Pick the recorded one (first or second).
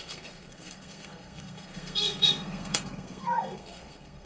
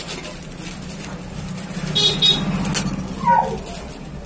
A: second